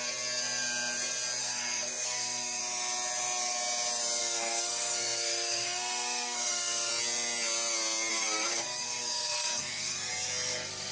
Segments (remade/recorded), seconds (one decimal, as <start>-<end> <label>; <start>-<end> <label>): 0.0-1.4 recorded; 1.4-2.6 remade; 2.6-4.2 recorded; 4.2-6.9 remade; 6.9-8.1 recorded; 8.1-10.1 remade; 10.1-10.9 recorded